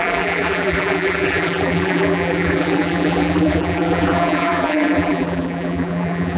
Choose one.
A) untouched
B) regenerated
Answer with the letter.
B